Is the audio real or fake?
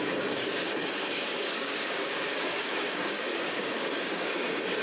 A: fake